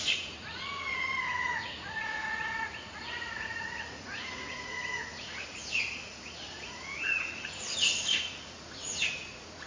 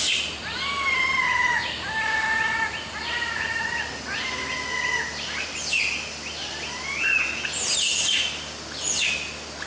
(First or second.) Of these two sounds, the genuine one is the second